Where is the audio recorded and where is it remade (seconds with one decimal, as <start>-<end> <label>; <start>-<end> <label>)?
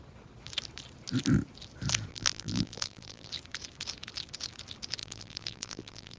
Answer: 0.0-2.1 recorded; 2.1-3.3 remade; 3.3-5.0 recorded; 5.0-6.2 remade